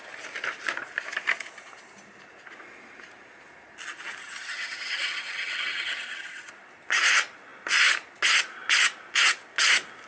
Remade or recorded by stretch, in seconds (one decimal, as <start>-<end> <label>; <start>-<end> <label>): 0.0-4.2 recorded; 4.2-6.5 remade; 6.5-10.1 recorded